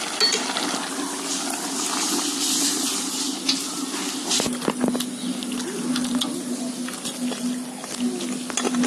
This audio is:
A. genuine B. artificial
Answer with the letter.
A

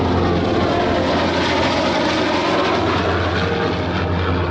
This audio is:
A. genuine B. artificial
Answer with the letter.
A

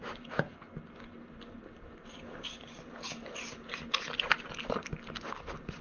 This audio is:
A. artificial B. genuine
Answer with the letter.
B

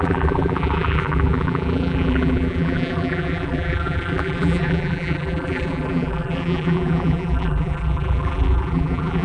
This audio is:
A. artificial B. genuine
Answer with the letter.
A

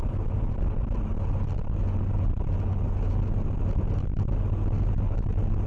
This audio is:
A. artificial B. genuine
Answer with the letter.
B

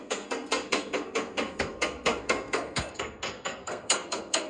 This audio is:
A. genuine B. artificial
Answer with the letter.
B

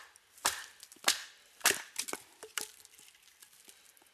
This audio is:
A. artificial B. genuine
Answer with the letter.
B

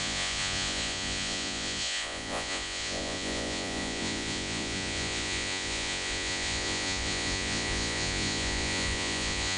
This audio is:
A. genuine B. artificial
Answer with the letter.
B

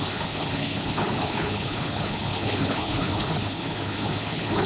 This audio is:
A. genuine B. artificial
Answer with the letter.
B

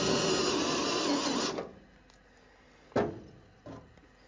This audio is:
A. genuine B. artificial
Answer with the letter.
A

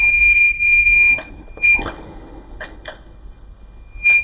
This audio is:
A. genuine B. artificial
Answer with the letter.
B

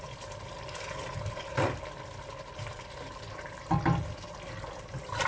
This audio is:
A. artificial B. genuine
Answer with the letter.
B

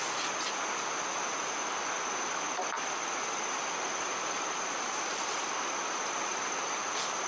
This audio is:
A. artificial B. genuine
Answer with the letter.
B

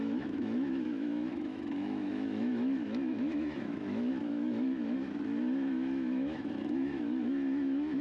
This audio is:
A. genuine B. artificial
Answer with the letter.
B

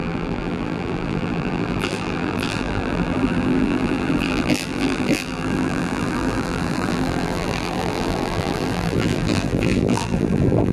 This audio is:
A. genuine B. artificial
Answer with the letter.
B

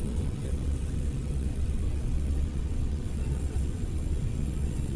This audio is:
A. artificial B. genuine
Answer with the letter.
A